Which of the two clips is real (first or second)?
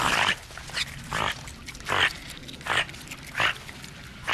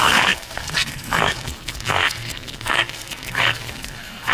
first